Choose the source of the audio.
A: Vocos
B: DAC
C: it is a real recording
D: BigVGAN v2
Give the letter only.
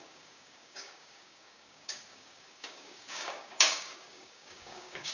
B